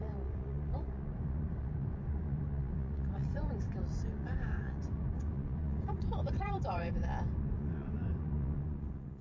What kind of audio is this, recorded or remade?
remade